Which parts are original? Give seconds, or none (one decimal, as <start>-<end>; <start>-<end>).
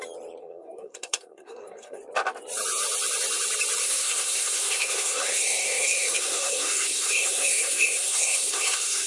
0.0-0.4; 2.0-3.8